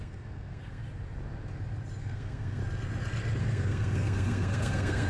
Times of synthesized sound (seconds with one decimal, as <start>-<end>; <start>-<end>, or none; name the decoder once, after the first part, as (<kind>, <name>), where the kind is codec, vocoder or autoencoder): 0.0-0.8 (codec, SNAC); 2.0-2.6; 3.4-5.1